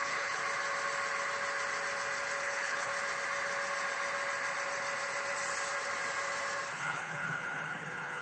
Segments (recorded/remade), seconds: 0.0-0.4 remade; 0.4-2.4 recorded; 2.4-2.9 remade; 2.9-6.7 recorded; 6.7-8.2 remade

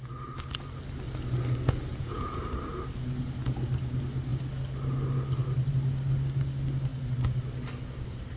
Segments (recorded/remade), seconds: 0.0-1.9 recorded; 1.9-2.4 remade; 2.4-8.4 recorded

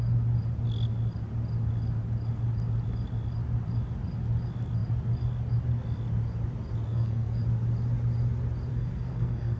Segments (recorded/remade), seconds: 0.0-6.9 recorded; 6.9-7.4 remade; 7.4-8.7 recorded; 8.7-9.6 remade

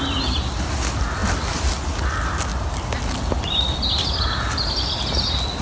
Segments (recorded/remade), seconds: 0.0-5.6 recorded